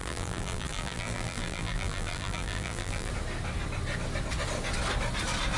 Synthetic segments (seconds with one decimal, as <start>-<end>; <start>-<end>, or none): 0.0-3.1